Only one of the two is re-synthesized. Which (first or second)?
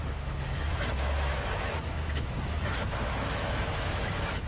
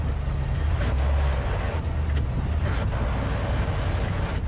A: first